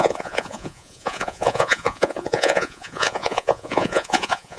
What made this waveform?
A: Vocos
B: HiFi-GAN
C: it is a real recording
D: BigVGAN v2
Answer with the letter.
A